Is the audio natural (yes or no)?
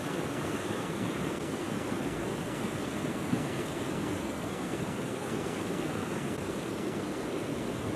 no